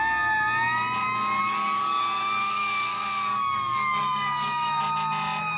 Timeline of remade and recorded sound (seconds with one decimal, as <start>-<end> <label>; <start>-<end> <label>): 0.0-1.4 recorded; 1.4-4.8 remade; 4.8-5.6 recorded